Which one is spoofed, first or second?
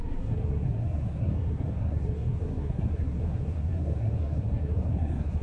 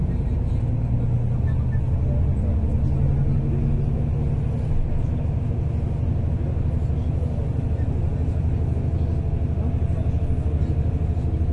first